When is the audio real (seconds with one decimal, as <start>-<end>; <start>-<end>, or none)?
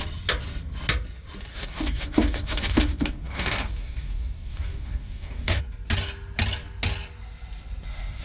0.0-1.5; 5.6-8.2